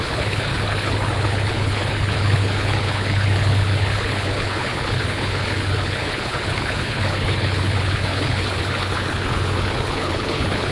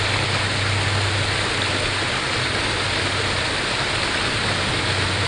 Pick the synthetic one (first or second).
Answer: first